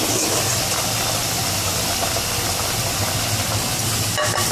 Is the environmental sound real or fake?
fake